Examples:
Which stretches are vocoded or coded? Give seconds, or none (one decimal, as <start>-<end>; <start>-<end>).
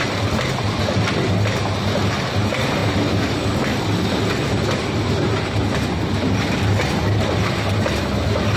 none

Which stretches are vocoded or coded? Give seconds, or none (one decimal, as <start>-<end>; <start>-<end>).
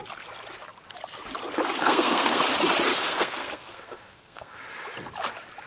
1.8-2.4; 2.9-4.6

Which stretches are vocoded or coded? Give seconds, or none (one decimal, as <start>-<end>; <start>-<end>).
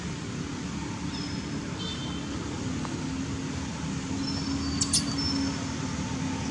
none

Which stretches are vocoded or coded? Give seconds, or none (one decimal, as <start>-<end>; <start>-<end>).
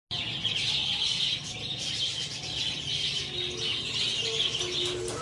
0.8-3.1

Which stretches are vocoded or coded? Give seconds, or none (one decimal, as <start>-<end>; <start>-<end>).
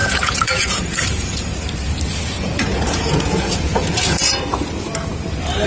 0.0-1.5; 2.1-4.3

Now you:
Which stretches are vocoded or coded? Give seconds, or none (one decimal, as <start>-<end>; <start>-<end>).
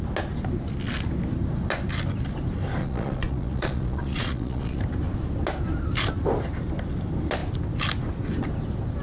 2.8-4.8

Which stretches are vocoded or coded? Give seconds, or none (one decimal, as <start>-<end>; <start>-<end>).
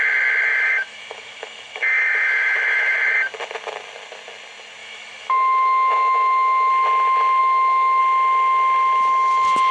0.5-3.0; 4.8-6.7; 7.4-8.0